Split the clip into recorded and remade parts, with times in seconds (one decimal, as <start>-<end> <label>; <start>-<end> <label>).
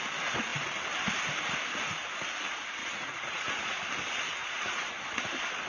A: 0.0-2.8 recorded; 2.8-3.8 remade; 3.8-4.4 recorded; 4.4-5.0 remade; 5.0-5.7 recorded